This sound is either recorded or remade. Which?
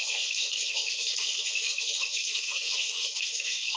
remade